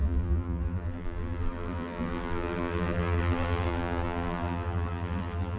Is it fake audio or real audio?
fake